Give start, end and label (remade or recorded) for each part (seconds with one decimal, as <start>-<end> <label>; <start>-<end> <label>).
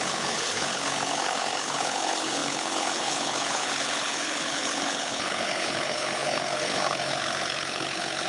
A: 0.0-8.3 remade